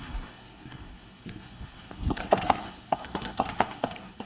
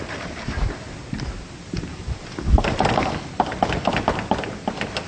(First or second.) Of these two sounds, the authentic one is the second